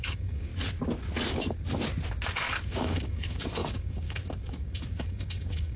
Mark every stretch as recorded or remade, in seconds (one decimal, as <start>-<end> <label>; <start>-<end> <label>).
0.0-0.5 remade; 0.5-2.7 recorded; 2.7-5.8 remade